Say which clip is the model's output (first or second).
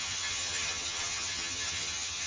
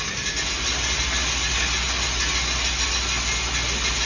first